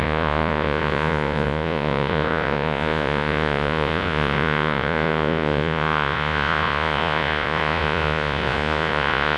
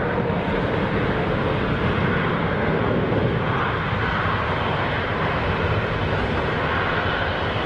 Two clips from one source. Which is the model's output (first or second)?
first